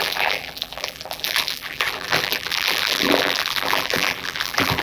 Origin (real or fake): fake